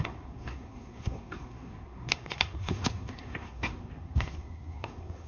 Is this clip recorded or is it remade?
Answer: remade